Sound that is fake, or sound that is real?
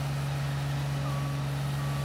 real